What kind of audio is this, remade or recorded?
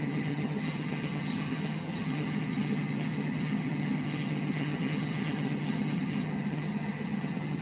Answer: remade